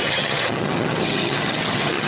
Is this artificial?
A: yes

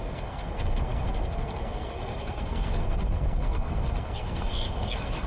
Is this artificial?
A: yes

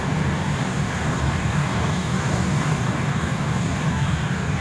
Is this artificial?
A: yes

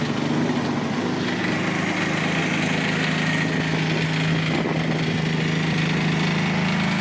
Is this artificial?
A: no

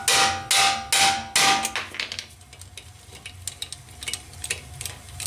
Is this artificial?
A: no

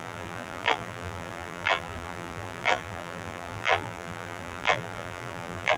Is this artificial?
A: yes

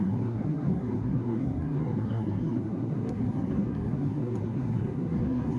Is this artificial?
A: yes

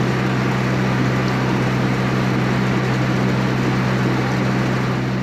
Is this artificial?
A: no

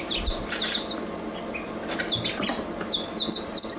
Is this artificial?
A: no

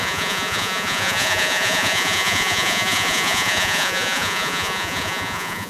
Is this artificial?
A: yes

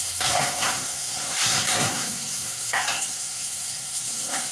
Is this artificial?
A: yes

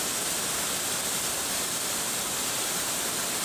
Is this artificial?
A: no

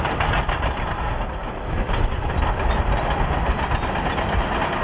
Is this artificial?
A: no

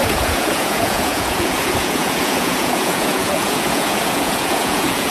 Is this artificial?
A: yes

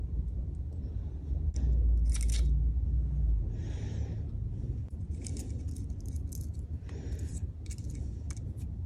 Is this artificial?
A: no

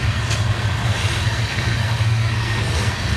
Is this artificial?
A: yes